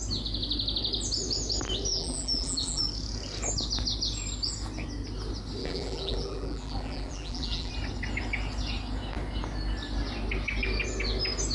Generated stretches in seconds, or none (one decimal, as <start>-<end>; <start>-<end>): 1.9-2.8; 5.6-7.7